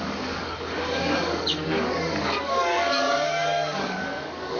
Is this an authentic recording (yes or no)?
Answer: no